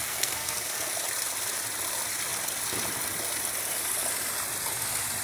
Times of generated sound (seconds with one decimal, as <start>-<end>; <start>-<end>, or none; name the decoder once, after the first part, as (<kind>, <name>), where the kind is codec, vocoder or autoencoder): 0.0-0.9 (codec, SNAC)

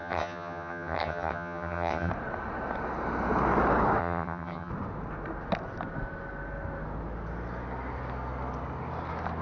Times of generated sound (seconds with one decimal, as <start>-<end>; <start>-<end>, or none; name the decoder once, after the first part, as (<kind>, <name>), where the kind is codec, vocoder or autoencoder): 0.0-2.1 (vocoder, HiFi-GAN); 4.0-4.7

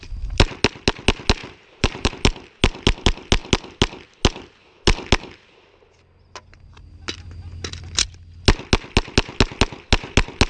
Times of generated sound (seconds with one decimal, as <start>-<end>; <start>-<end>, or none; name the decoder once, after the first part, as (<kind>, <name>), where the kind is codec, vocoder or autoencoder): 1.4-2.1 (vocoder, BigVGAN v2)

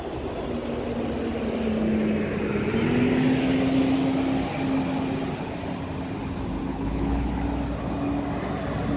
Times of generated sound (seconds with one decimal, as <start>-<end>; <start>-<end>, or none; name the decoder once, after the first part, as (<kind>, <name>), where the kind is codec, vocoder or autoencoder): 6.7-7.3 (codec, HILCodec)

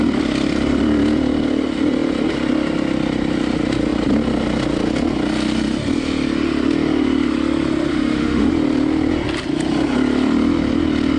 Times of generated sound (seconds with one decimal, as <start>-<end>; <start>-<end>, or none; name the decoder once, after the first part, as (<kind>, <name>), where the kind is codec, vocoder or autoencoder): 7.9-8.5 (autoencoder, DAC-VAE)

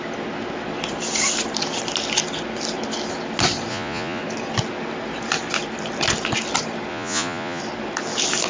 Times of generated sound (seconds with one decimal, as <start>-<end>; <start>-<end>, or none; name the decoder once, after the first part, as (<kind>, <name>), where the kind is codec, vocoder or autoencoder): 3.7-4.2 (vocoder, Vocos); 6.9-7.6

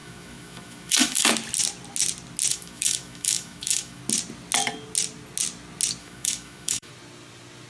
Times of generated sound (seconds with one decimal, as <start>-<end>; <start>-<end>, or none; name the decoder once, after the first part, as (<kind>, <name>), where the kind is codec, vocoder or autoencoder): 0.0-1.3 (autoencoder, DAC-VAE); 2.5-4.0; 6.0-6.9